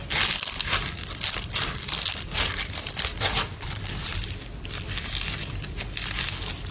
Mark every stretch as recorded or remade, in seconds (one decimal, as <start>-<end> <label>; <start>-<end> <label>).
0.0-1.0 recorded; 1.0-5.0 remade; 5.0-6.7 recorded